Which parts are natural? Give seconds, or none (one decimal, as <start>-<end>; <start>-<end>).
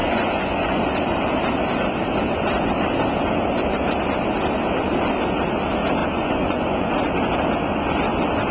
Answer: 0.8-6.0; 6.9-8.5